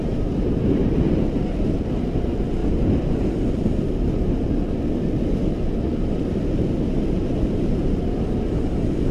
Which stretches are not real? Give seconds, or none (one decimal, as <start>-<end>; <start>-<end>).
0.0-0.8